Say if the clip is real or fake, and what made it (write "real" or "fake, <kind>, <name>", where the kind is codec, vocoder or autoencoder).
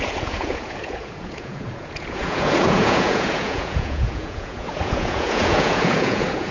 fake, vocoder, Vocos